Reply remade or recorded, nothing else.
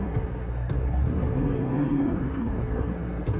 remade